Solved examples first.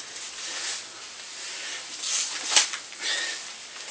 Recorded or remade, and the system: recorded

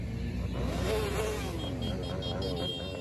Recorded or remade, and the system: recorded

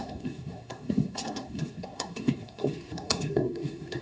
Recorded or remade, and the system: remade, codec, SNAC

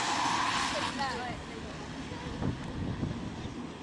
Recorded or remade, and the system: recorded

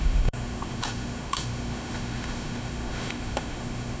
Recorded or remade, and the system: remade, autoencoder, DAC-VAE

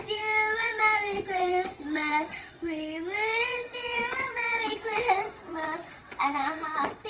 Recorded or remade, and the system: remade, vocoder, WaveNeXt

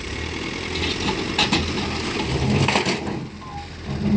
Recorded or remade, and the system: recorded